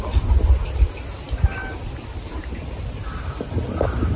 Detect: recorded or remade recorded